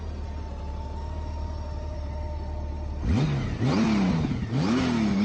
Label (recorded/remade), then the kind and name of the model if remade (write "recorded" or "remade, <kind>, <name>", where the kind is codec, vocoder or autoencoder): recorded